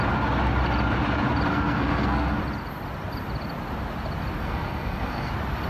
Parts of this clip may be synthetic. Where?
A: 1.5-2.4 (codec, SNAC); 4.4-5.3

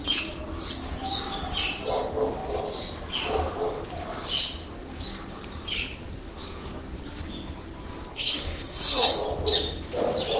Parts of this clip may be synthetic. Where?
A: 8.1-9.1 (codec, SNAC)

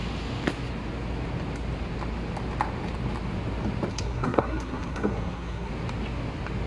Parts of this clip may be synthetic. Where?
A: 3.9-5.7 (codec, SNAC)

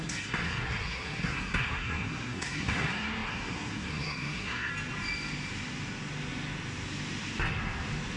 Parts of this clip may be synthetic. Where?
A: 0.0-4.7 (codec, SNAC)

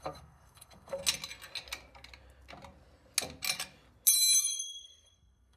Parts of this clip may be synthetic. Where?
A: 0.0-1.0 (codec, SNAC); 4.4-5.6

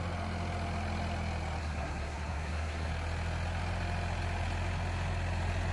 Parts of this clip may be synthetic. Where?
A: 1.6-2.9 (codec, SNAC)